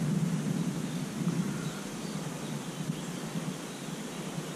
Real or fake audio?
real